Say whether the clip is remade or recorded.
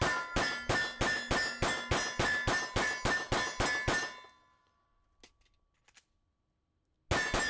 recorded